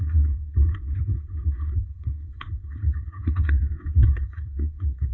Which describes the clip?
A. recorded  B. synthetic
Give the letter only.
B